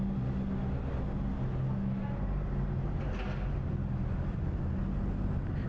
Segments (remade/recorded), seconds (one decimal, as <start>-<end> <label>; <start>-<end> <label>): 0.0-5.7 recorded